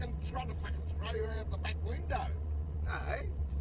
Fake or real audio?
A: fake